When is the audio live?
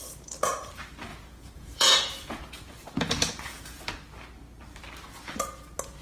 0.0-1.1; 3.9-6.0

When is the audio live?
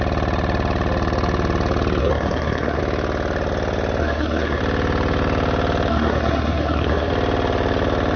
0.0-2.0; 2.8-4.0; 4.6-5.9; 7.1-8.2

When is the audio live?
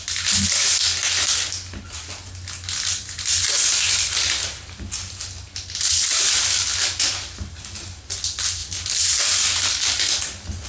0.0-10.7